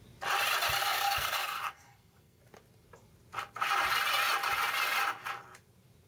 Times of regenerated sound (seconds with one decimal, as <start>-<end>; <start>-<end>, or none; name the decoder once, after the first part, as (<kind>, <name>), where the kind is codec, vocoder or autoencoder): 0.8-2.4 (codec, SNAC)